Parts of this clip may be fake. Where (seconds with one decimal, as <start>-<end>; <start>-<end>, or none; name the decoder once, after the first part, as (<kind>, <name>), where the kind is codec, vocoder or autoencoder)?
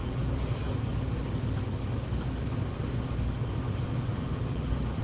0.0-0.9 (vocoder, BigVGAN v2); 3.9-5.0